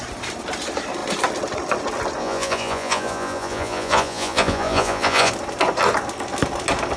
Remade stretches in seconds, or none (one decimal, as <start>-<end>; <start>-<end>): 2.2-5.3